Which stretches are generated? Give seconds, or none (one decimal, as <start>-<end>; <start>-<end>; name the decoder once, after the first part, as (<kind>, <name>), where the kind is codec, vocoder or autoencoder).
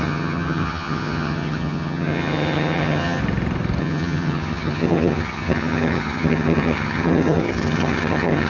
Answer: 0.0-3.2 (vocoder, HiFi-GAN); 3.8-8.5